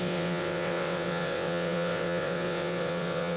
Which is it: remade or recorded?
remade